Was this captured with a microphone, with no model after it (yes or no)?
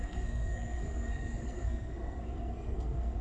no